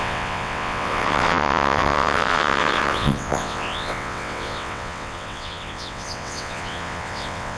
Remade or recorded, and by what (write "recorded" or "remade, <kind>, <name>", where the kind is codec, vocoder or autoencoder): remade, vocoder, WaveNeXt